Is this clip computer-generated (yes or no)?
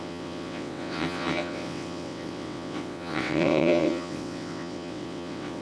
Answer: yes